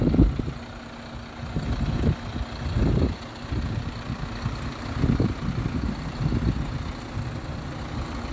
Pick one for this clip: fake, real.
real